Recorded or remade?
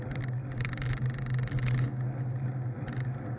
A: recorded